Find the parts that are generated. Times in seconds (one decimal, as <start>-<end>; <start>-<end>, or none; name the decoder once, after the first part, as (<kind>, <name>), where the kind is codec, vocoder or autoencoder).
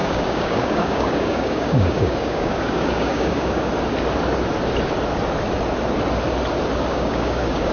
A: 0.0-3.7 (codec, DAC); 6.9-7.7